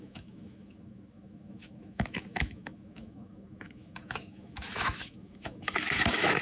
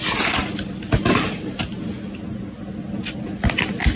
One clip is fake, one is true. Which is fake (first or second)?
first